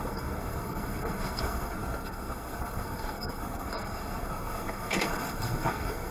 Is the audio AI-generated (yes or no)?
yes